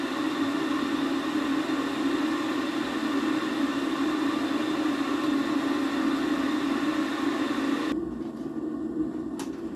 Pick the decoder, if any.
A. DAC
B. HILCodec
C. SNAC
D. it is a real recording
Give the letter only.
D